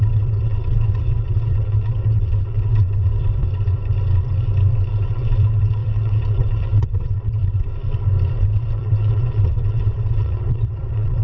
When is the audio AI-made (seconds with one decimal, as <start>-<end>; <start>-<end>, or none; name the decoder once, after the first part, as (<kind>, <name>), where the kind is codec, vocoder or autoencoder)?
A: 0.0-3.2 (vocoder, WaveNeXt); 4.9-7.4; 8.3-11.2